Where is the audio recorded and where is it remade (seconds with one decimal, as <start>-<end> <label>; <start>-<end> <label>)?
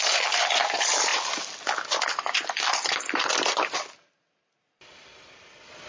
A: 0.0-5.9 recorded